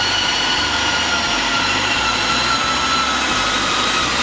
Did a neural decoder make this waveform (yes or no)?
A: yes